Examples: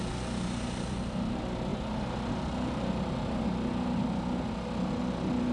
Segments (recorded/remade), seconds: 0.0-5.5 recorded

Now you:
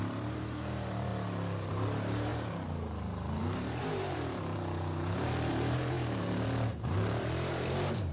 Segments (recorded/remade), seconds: 0.0-1.1 remade; 1.1-1.7 recorded; 1.7-8.1 remade